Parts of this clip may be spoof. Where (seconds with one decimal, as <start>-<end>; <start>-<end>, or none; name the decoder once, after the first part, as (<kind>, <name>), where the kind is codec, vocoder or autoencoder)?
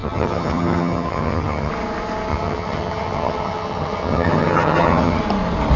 0.0-1.7 (vocoder, HiFi-GAN); 2.3-5.2